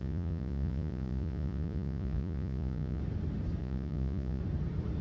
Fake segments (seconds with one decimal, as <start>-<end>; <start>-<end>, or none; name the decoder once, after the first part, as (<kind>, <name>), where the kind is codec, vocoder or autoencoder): 0.0-3.0 (vocoder, Vocos); 3.6-4.4